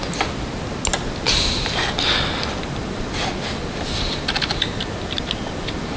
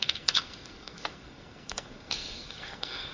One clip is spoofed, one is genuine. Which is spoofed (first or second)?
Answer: second